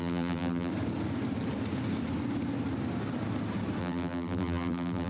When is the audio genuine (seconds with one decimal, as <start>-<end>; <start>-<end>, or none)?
0.7-3.8